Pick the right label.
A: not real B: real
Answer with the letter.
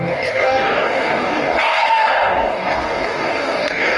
A